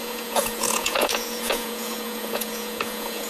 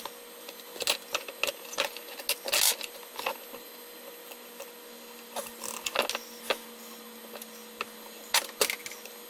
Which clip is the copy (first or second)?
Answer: first